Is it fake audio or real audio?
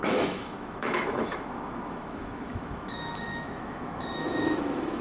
fake